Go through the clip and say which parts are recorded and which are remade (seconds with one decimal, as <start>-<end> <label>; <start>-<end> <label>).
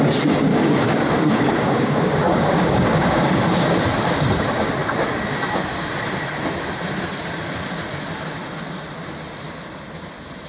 0.0-0.5 recorded; 0.5-3.4 remade; 3.4-10.5 recorded